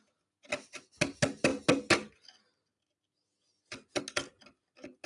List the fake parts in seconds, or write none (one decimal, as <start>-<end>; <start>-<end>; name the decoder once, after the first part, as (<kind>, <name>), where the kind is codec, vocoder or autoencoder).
none